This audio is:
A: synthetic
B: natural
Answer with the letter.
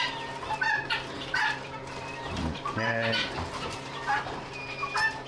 A